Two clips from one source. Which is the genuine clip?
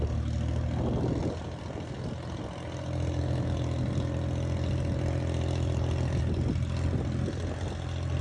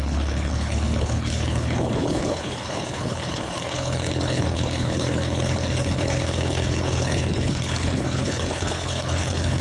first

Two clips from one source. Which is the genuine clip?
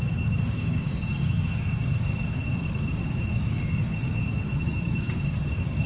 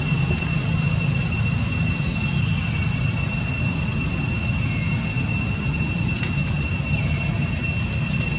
second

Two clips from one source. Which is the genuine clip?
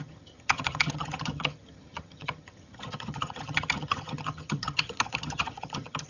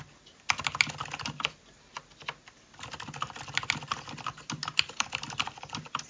second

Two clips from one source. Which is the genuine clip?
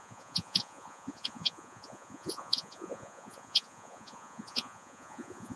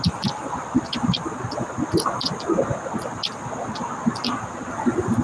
second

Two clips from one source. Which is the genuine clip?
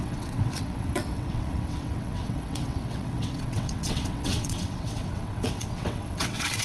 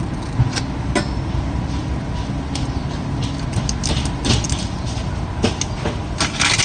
second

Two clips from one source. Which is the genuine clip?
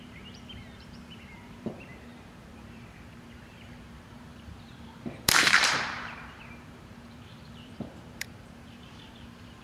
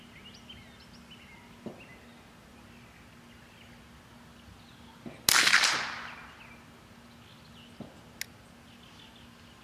second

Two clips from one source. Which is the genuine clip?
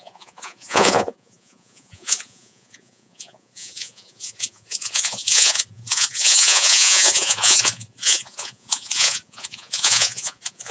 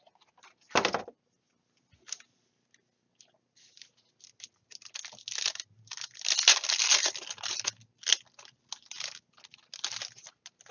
second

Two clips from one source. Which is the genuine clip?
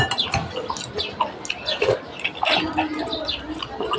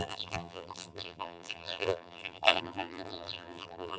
first